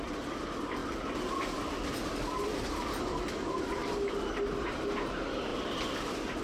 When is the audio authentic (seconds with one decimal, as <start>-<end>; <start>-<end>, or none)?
0.0-5.5; 6.0-6.4